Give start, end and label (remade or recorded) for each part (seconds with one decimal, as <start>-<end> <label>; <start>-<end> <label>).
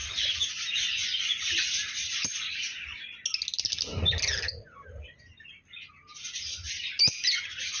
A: 0.0-7.8 recorded